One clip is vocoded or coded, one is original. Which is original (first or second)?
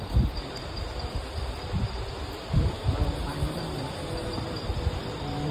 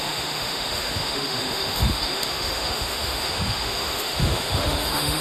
first